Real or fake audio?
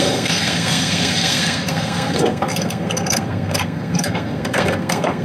fake